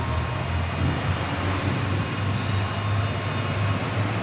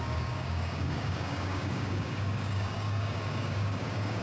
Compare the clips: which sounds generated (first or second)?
second